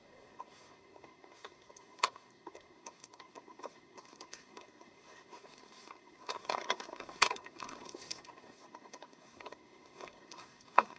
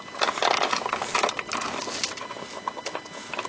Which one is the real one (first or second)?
second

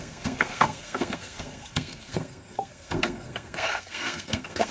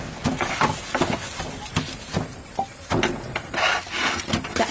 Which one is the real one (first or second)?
second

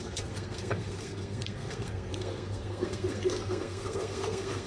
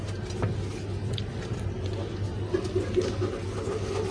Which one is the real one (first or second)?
second